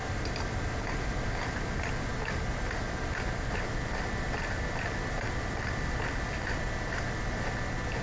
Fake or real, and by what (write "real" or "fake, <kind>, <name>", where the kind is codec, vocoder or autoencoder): real